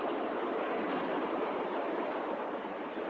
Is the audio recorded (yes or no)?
yes